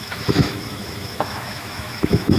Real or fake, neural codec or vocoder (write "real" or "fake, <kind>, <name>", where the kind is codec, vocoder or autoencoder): fake, autoencoder, DAC-VAE